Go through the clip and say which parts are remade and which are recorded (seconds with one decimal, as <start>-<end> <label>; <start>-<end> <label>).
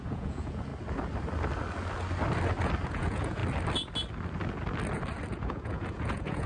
0.0-0.7 remade; 0.7-2.9 recorded; 2.9-3.4 remade; 3.4-5.3 recorded; 5.3-6.5 remade